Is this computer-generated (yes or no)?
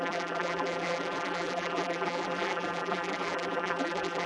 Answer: yes